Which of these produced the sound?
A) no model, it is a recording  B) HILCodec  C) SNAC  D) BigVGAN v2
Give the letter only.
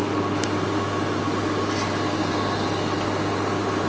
A